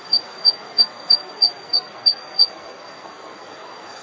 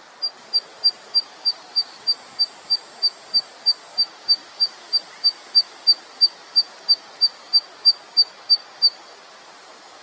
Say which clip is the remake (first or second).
first